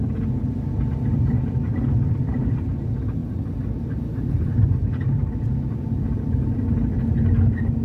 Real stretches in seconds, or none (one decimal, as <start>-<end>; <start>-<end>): 0.0-7.8